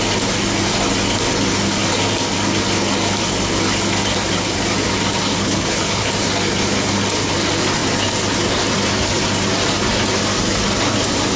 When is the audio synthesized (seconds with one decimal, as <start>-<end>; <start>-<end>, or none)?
5.3-6.1